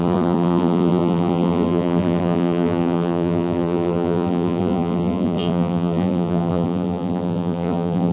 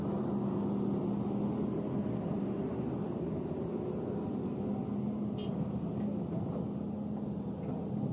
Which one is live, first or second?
second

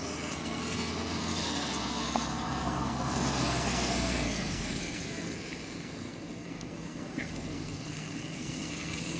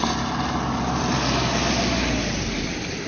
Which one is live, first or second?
second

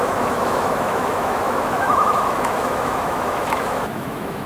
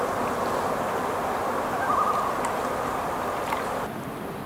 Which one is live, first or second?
second